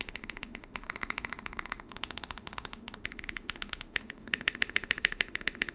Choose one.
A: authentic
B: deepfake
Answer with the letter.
B